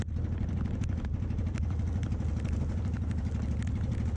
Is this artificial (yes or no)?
no